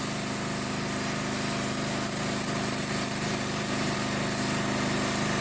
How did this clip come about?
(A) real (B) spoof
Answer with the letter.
A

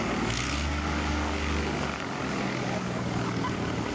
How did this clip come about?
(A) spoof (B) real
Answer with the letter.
A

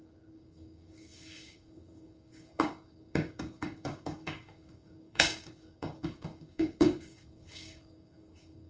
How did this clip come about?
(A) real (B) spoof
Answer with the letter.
B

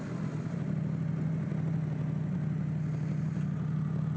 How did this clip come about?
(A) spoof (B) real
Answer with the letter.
B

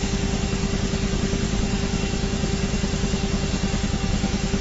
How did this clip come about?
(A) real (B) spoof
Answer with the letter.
B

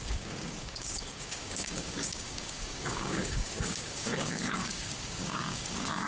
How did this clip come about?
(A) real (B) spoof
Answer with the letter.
B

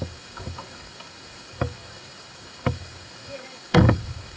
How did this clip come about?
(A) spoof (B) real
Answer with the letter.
A